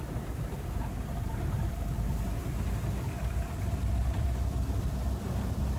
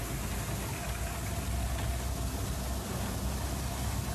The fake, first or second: first